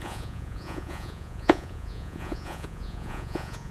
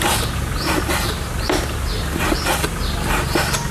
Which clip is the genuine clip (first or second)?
second